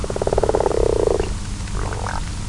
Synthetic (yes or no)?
no